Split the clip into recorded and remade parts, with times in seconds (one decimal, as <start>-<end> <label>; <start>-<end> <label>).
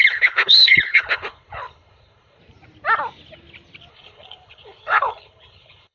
0.0-2.4 remade; 2.4-3.9 recorded; 3.9-5.9 remade